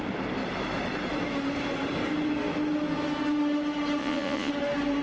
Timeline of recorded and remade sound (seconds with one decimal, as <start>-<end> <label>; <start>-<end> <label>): 0.0-4.0 recorded; 4.0-4.5 remade; 4.5-5.0 recorded